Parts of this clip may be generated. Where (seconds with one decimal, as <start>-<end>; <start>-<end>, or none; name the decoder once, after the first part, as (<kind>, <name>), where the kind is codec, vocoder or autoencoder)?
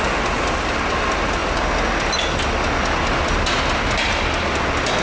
none